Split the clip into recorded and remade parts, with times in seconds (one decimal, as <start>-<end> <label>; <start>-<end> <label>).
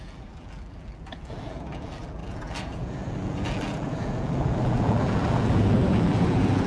0.0-6.7 remade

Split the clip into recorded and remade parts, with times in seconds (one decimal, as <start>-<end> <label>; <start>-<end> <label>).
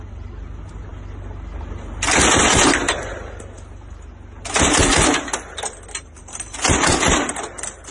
0.0-7.9 recorded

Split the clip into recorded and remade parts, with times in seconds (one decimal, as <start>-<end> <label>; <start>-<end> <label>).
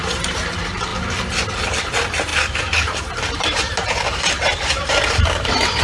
0.0-0.9 remade; 0.9-1.7 recorded; 1.7-5.8 remade